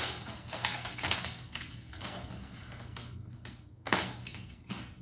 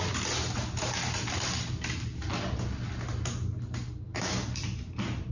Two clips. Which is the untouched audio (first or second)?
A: second